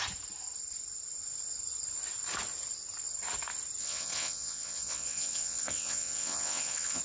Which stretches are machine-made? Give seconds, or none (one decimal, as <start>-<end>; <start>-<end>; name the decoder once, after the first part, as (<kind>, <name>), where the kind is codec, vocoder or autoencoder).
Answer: 3.8-7.0 (vocoder, WaveNeXt)